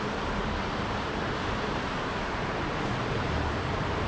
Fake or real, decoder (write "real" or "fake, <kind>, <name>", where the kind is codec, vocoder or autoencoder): fake, vocoder, BigVGAN v2